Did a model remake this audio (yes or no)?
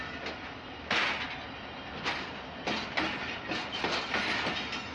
no